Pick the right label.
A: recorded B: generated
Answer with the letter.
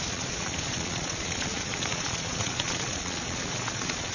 B